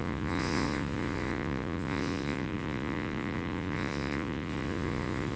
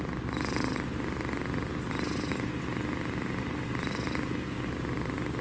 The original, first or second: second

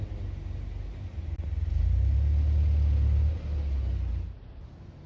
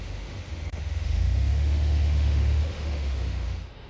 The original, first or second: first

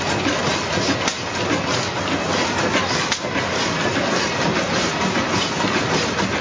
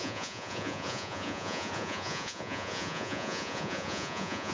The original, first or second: first